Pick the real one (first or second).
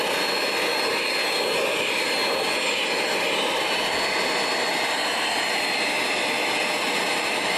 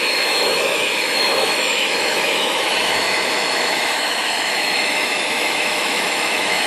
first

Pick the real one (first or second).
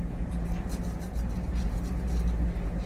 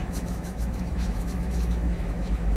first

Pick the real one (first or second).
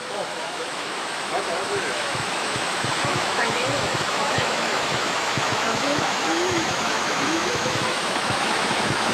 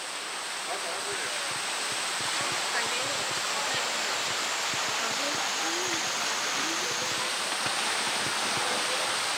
second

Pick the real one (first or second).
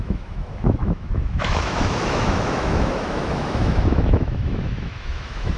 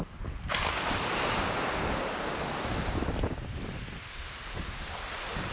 second